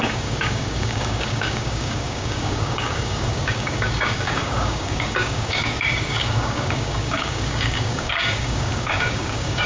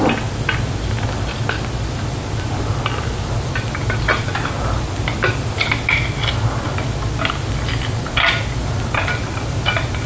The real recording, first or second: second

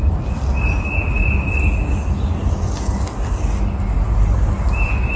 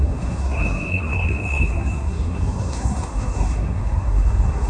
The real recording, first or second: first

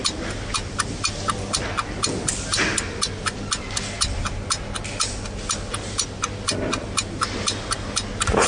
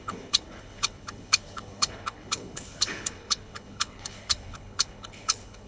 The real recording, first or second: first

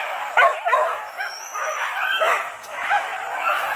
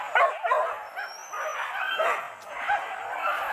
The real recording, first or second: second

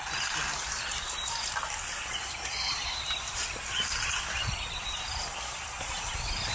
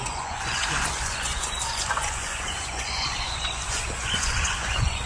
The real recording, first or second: first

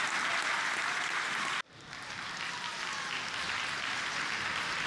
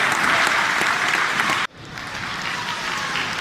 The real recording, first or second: first